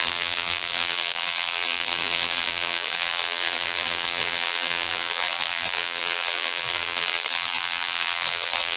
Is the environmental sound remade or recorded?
remade